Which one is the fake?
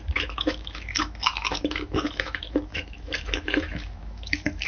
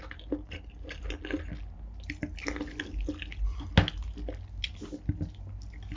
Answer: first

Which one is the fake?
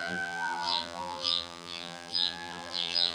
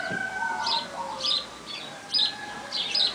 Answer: first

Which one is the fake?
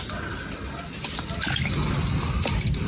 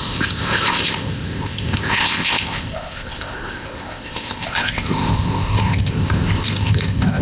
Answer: second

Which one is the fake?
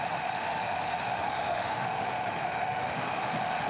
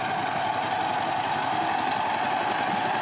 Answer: first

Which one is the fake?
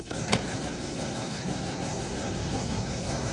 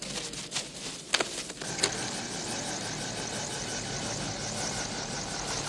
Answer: first